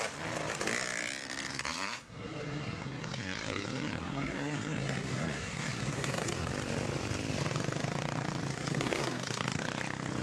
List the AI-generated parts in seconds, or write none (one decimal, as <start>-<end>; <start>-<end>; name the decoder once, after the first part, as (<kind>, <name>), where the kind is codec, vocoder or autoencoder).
1.5-6.5 (codec, SNAC); 8.5-9.6